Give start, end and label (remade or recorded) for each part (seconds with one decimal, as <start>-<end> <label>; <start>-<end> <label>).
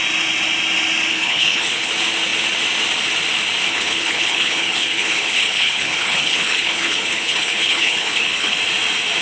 0.0-1.1 recorded; 1.1-1.9 remade; 1.9-3.7 recorded; 3.7-8.6 remade; 8.6-9.2 recorded